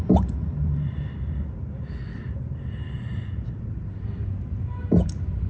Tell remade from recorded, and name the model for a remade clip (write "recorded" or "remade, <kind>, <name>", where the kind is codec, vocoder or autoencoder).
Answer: remade, vocoder, BigVGAN v2